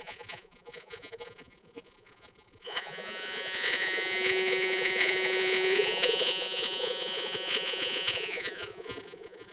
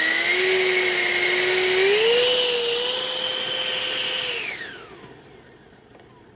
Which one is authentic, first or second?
second